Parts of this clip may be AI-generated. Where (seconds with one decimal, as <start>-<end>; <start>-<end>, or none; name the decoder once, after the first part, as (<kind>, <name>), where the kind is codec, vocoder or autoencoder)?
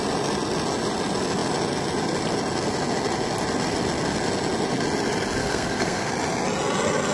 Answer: 5.4-6.1 (codec, SNAC)